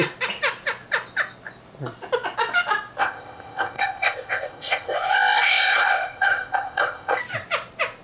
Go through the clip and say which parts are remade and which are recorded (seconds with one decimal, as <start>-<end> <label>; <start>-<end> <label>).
0.0-3.0 recorded; 3.0-7.2 remade; 7.2-8.0 recorded